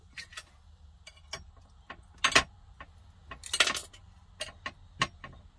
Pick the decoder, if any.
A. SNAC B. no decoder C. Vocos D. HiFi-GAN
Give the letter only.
B